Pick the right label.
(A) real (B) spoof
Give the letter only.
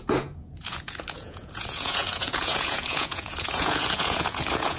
B